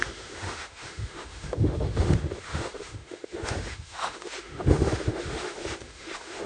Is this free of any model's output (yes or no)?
no